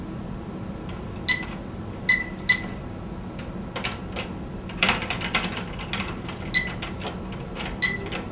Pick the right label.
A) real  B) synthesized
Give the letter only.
A